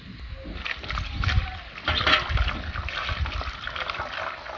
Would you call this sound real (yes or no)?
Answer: yes